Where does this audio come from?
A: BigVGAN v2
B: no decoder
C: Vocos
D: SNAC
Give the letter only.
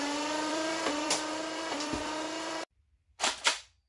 A